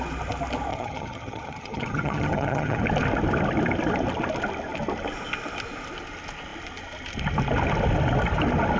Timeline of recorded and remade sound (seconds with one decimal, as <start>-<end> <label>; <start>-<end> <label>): 0.0-0.7 recorded; 0.7-2.8 remade; 2.8-8.8 recorded